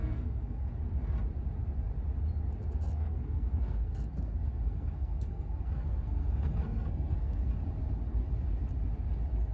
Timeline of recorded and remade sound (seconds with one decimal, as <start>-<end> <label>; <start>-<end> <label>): 0.0-0.7 remade; 0.7-2.9 recorded; 2.9-7.5 remade; 7.5-9.5 recorded